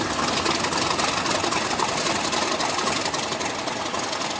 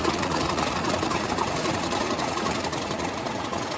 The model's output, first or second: second